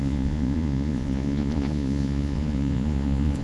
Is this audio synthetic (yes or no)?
yes